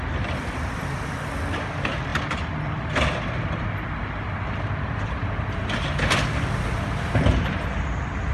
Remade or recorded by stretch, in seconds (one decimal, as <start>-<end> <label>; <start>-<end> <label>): 0.0-2.1 remade; 2.1-3.5 recorded; 3.5-8.3 remade